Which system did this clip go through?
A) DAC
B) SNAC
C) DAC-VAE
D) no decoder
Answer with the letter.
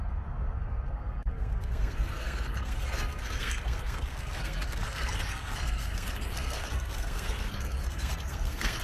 B